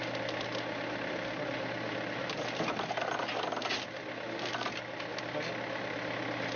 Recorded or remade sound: recorded